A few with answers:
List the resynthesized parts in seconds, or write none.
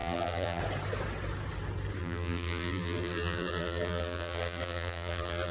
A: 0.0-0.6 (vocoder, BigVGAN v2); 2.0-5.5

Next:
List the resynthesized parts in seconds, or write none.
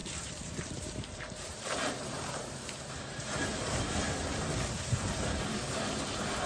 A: 0.0-6.5 (vocoder, BigVGAN v2)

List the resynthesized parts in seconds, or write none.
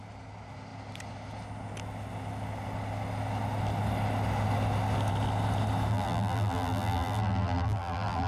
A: 5.9-8.3 (vocoder, BigVGAN v2)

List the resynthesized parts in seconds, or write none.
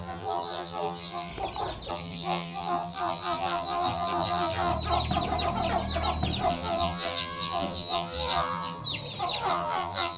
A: 0.0-1.3 (vocoder, BigVGAN v2); 1.9-4.7; 6.5-8.8; 9.5-10.2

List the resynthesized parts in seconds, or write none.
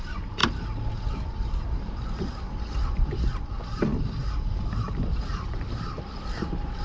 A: 0.0-0.4 (vocoder, BigVGAN v2); 2.6-3.9; 5.1-6.8